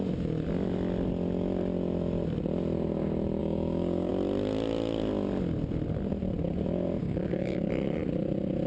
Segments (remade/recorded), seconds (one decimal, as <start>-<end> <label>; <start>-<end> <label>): 0.0-3.4 recorded; 3.4-4.1 remade; 4.1-7.0 recorded; 7.0-7.7 remade; 7.7-8.7 recorded

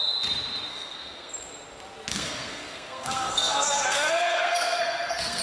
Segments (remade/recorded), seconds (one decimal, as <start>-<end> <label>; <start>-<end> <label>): 0.0-0.7 recorded; 0.7-1.3 remade; 1.3-2.1 recorded; 2.1-5.4 remade

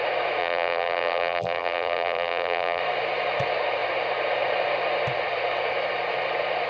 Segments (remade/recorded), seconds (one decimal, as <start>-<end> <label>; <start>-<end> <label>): 0.0-0.4 recorded; 0.4-2.8 remade; 2.8-6.7 recorded